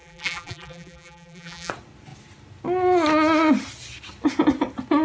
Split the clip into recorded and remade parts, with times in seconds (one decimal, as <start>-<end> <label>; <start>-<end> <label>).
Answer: 0.0-1.7 remade; 1.7-5.0 recorded